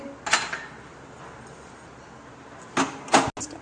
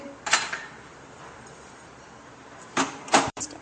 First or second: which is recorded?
first